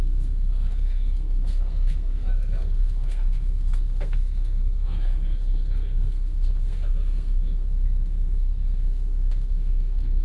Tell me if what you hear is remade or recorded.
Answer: remade